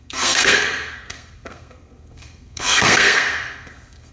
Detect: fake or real fake